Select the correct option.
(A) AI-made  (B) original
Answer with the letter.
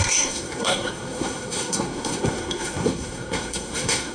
A